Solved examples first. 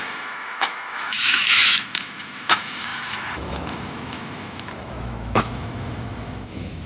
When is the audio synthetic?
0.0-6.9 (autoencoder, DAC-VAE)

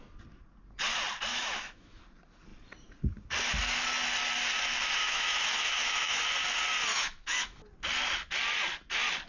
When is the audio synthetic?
1.3-2.0 (autoencoder, DAC-VAE); 5.0-6.2; 6.9-7.6